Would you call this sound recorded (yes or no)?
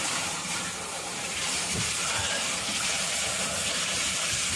no